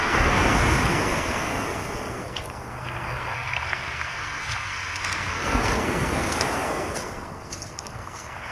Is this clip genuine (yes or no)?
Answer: no